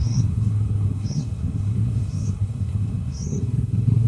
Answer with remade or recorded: remade